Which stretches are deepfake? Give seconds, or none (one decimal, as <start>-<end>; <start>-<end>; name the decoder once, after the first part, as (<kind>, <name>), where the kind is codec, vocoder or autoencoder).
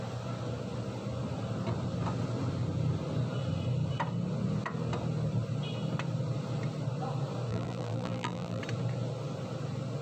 7.5-8.6 (vocoder, BigVGAN v2)